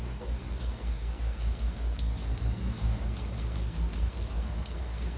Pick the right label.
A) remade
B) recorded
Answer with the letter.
A